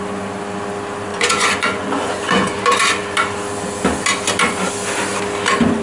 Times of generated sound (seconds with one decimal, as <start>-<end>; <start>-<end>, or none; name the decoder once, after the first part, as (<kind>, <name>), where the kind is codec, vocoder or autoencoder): 1.1-2.6 (vocoder, Vocos)